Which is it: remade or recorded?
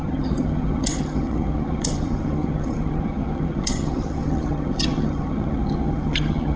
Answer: remade